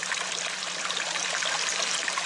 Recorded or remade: recorded